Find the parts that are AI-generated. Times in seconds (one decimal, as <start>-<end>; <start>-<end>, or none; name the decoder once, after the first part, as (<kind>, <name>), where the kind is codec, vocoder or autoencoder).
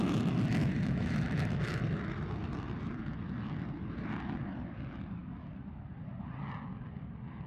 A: 0.6-1.8 (autoencoder, DAC-VAE)